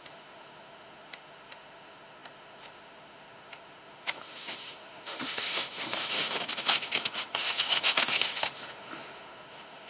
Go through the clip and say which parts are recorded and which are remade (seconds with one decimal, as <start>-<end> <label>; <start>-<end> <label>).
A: 0.0-9.9 remade